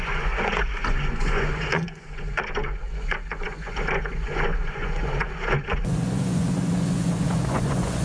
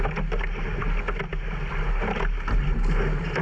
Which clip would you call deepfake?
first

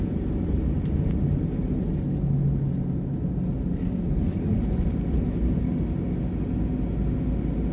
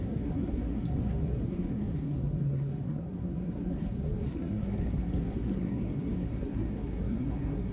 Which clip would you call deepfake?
second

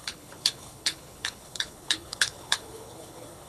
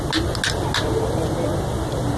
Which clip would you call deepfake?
first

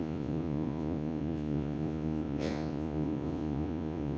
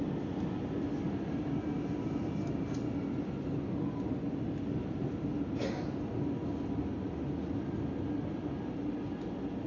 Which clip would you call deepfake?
first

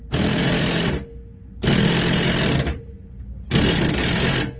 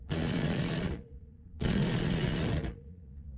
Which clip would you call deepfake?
second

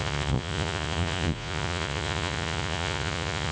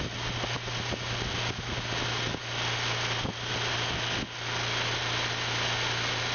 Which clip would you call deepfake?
first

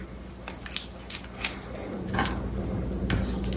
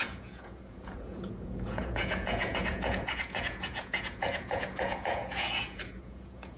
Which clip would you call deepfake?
second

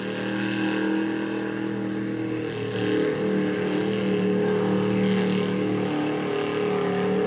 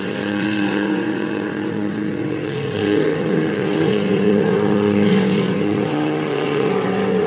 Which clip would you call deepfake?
second